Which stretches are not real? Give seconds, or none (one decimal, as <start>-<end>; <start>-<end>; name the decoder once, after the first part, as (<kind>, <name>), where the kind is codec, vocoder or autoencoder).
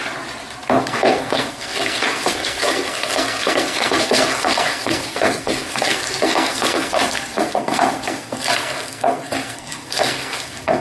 0.8-10.8 (codec, SNAC)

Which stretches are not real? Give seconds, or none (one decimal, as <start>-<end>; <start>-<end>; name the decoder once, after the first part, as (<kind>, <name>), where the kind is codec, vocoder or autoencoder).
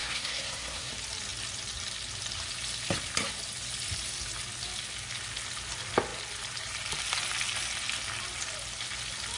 0.0-0.9 (codec, SNAC)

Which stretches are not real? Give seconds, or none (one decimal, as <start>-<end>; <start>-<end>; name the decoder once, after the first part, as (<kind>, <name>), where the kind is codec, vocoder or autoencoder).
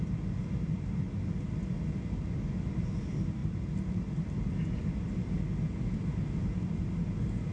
none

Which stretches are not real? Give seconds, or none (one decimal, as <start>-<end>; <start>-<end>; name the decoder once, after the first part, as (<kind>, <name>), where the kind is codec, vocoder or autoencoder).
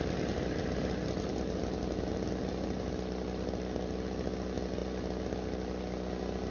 none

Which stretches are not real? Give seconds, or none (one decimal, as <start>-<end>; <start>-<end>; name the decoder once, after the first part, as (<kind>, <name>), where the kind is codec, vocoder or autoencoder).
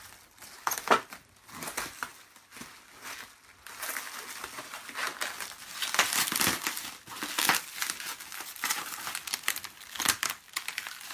none